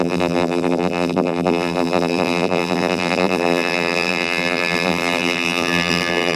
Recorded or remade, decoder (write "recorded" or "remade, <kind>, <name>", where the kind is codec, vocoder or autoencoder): remade, vocoder, BigVGAN v2